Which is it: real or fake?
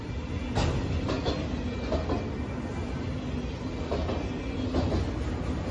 real